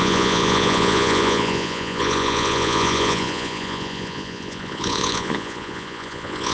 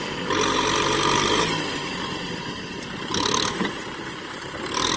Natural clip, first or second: second